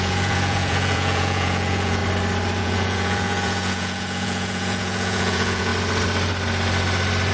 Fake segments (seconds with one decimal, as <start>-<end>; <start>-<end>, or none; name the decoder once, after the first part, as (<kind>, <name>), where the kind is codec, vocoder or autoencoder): 0.0-2.0 (vocoder, Vocos); 2.6-5.7